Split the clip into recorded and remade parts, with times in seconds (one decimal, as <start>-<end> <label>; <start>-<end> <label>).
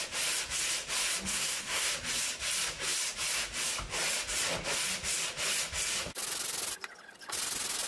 0.0-1.3 recorded; 1.3-1.9 remade; 1.9-7.9 recorded